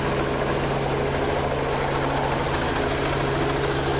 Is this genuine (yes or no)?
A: yes